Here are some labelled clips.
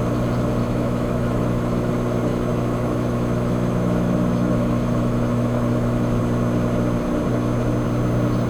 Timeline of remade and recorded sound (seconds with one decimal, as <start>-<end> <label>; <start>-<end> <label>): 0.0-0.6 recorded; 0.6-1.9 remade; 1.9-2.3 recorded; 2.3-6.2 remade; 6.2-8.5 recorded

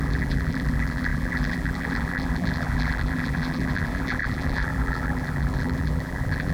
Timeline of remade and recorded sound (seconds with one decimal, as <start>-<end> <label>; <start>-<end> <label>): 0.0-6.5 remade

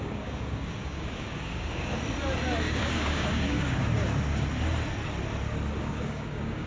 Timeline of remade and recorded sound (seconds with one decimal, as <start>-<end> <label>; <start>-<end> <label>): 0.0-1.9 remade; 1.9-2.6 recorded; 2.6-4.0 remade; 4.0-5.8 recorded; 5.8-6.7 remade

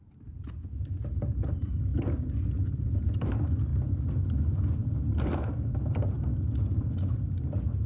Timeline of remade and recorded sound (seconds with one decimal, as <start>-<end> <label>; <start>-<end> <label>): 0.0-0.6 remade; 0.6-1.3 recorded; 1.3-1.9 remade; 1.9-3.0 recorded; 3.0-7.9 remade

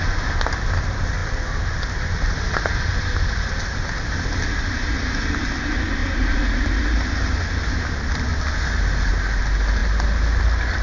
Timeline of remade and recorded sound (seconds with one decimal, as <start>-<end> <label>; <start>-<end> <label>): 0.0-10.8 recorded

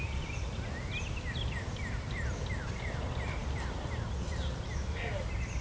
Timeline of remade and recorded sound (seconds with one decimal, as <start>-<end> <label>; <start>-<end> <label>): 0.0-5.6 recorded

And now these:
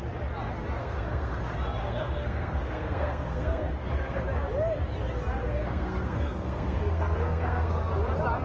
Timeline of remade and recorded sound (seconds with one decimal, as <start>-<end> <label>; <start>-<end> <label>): 0.0-0.8 recorded; 0.8-1.4 remade; 1.4-1.8 recorded; 1.8-4.2 remade; 4.2-5.4 recorded; 5.4-7.9 remade; 7.9-8.4 recorded

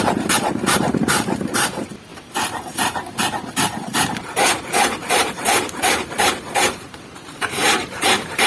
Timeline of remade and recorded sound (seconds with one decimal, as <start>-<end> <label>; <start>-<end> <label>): 0.0-8.5 remade